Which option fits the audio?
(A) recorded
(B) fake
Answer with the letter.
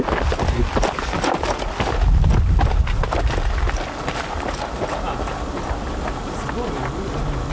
A